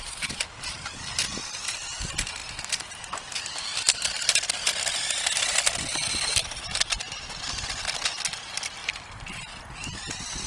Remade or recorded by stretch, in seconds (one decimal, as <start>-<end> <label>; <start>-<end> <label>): 0.0-10.5 recorded